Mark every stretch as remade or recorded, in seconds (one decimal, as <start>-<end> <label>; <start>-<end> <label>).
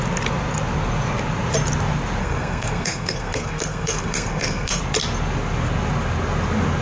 0.0-2.2 recorded; 2.2-4.8 remade; 4.8-6.8 recorded